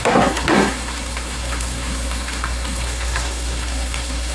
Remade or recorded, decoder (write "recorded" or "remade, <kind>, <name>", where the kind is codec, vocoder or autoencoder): remade, codec, SNAC